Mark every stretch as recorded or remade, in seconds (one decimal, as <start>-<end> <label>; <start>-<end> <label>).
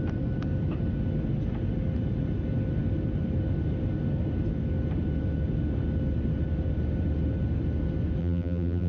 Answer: 0.0-8.2 recorded; 8.2-8.9 remade